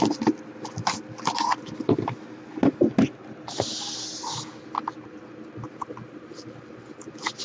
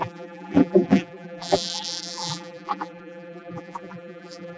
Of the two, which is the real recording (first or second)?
first